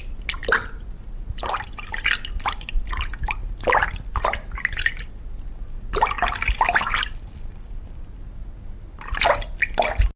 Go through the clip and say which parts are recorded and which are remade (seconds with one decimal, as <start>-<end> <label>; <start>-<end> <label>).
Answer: 0.0-10.2 recorded